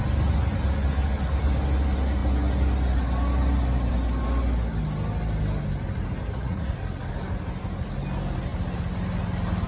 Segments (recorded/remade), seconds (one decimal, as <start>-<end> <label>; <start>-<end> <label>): 0.0-6.2 recorded; 6.2-6.8 remade; 6.8-9.7 recorded